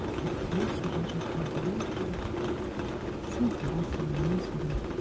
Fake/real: real